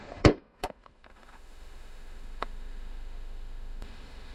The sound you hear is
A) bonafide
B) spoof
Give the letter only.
B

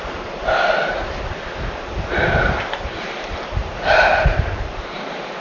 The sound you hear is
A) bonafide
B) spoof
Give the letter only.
B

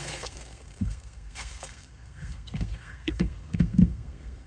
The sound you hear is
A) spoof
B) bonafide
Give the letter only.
A